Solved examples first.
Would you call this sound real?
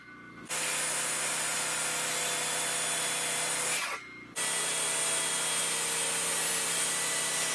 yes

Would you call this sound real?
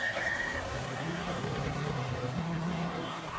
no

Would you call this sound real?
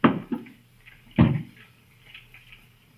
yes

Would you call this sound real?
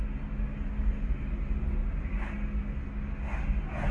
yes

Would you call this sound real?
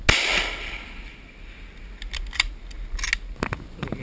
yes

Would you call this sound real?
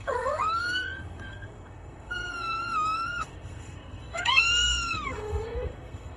no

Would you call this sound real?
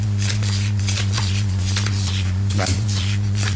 no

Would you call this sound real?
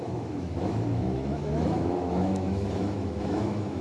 no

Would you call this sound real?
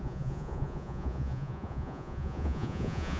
no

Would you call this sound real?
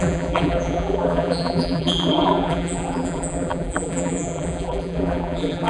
no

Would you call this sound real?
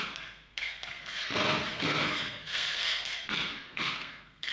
no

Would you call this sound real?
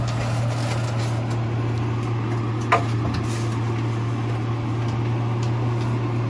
yes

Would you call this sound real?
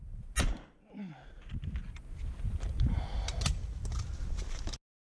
yes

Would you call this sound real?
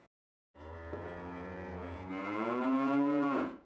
no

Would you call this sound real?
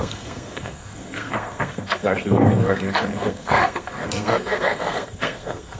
no